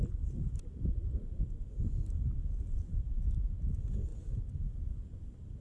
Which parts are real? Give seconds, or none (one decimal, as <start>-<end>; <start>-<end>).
0.0-5.6